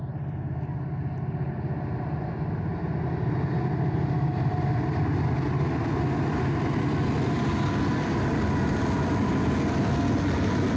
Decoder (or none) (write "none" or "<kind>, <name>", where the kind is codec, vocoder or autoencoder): none